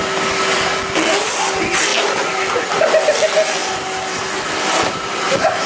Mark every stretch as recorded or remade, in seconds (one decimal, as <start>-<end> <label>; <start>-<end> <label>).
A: 0.0-1.9 recorded; 1.9-2.5 remade; 2.5-5.7 recorded